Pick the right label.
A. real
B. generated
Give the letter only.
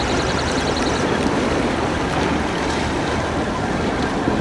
A